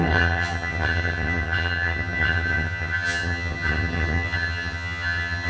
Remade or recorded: remade